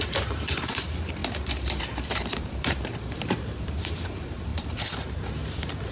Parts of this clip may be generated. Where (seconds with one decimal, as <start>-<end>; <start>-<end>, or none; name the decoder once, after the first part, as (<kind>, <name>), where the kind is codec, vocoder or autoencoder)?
0.0-1.2 (vocoder, BigVGAN v2); 1.8-4.5; 5.0-5.9